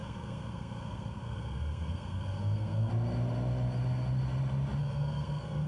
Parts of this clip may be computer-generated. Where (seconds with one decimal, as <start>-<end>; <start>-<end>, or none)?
0.0-2.9; 4.8-5.7